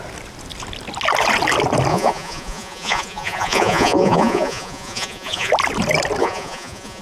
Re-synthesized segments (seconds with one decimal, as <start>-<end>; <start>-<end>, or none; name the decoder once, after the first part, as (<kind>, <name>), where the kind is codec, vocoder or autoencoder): 1.9-5.5 (vocoder, Vocos); 6.2-7.0

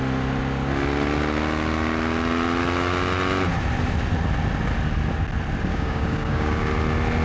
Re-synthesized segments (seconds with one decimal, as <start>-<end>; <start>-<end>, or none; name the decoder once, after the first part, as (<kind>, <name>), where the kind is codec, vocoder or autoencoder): 5.7-6.7 (codec, DAC)

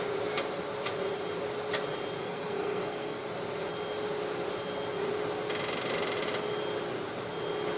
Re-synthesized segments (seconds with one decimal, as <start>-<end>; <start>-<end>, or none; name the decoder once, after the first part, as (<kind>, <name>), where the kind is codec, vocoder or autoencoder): 2.2-3.2 (codec, SNAC)

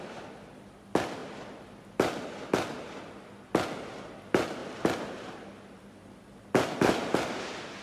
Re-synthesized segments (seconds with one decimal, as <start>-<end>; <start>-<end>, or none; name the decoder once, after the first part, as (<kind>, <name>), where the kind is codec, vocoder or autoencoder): none

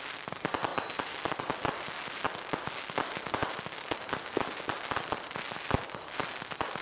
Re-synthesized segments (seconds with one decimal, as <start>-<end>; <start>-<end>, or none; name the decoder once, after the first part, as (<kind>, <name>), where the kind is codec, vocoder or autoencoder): none

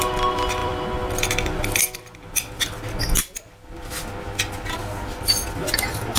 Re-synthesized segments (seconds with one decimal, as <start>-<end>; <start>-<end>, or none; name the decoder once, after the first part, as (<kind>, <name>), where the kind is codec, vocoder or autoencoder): 0.6-2.0 (vocoder, BigVGAN v2)

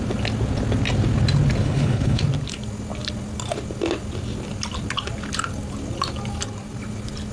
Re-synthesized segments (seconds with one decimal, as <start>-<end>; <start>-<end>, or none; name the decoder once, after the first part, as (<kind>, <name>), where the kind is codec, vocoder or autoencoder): 1.6-2.2 (codec, HILCodec)